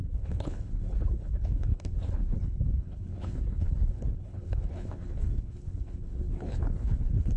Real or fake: fake